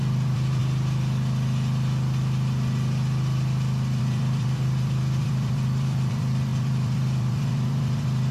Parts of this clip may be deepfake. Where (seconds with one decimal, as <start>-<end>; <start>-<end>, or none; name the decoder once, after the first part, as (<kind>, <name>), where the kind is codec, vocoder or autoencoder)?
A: 0.0-0.6 (vocoder, BigVGAN v2); 4.0-8.3